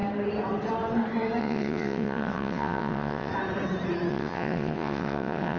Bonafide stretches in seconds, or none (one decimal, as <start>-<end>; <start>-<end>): 0.0-1.4; 3.3-4.1